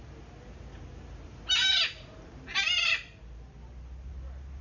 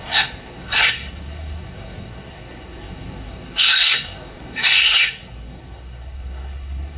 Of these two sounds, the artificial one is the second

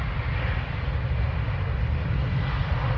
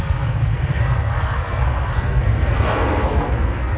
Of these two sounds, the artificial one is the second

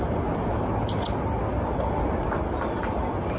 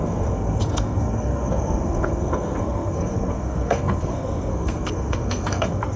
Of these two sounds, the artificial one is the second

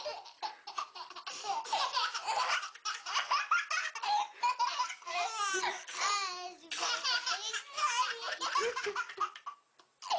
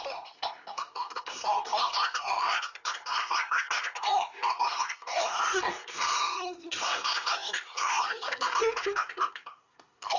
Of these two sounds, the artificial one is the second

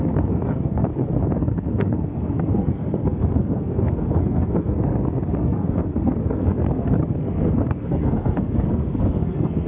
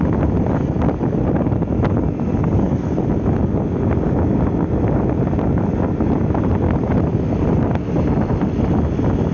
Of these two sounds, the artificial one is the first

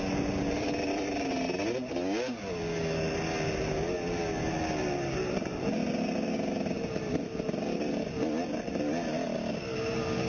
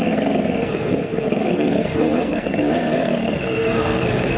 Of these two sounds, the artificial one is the second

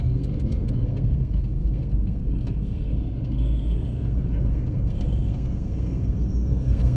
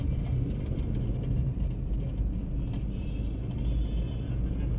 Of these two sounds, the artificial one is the first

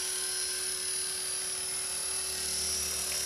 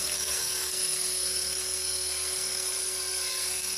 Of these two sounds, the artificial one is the second